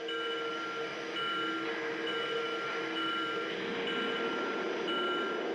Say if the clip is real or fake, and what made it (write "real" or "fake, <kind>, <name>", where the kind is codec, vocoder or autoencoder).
real